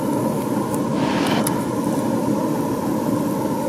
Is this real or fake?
real